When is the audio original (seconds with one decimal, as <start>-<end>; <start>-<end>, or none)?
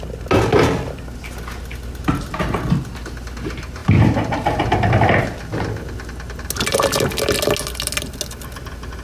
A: 0.0-9.0